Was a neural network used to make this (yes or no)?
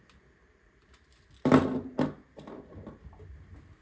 no